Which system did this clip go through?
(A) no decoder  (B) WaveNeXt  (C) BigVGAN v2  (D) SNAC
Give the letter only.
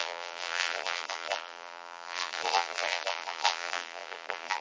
C